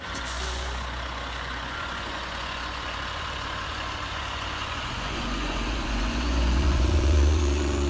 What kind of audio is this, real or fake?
fake